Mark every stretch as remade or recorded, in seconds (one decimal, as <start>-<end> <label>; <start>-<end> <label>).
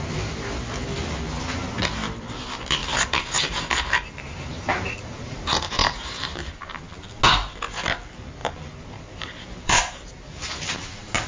0.0-2.8 recorded; 2.8-6.8 remade; 6.8-8.4 recorded; 8.4-10.7 remade; 10.7-11.3 recorded